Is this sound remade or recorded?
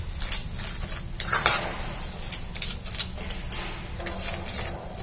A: recorded